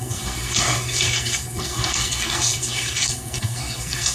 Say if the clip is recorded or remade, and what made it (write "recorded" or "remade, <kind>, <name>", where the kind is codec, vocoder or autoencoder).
remade, codec, SNAC